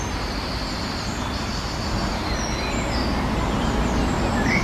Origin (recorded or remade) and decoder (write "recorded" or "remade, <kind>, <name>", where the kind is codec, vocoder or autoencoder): recorded